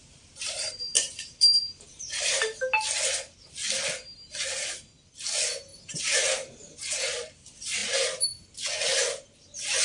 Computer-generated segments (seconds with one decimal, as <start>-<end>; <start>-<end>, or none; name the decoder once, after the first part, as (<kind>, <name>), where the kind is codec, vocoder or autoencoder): 0.0-2.6 (vocoder, BigVGAN v2); 5.7-6.7